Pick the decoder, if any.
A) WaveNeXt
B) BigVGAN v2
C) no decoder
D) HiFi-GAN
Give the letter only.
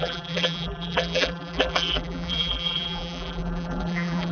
B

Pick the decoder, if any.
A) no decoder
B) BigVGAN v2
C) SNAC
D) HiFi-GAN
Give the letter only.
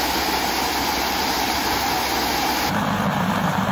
B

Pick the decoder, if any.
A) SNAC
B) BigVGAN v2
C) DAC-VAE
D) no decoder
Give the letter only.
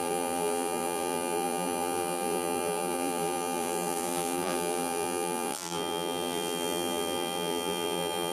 B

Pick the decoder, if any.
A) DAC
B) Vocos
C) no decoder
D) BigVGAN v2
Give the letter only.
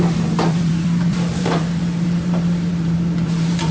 D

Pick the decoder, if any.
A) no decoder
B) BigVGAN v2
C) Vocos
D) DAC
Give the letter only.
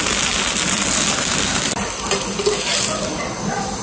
A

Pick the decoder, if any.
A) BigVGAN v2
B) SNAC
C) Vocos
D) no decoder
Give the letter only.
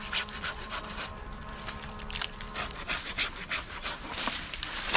A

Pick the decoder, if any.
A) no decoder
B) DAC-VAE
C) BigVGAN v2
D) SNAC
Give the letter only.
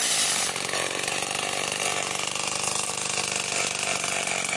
C